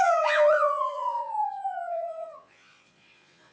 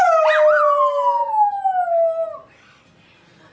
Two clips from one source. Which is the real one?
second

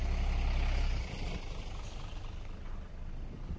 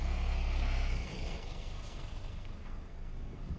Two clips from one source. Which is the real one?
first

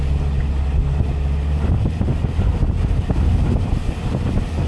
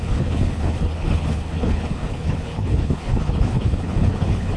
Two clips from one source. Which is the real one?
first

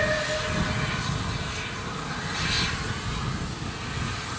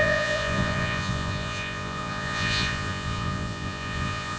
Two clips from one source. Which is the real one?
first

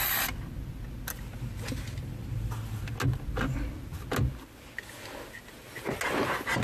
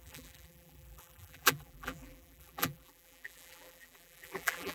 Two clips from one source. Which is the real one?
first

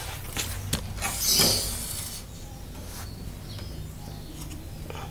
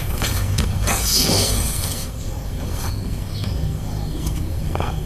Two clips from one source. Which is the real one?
first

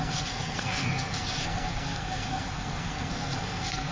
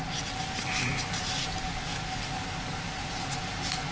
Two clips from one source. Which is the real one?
second